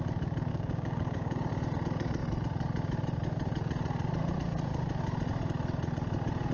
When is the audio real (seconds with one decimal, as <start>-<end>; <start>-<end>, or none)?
0.0-0.5; 1.5-6.5